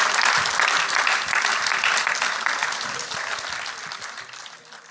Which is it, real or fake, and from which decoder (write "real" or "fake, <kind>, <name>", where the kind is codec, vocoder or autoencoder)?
real